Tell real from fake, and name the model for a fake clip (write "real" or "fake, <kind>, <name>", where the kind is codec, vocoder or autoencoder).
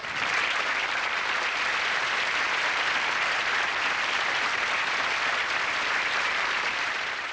fake, vocoder, BigVGAN v2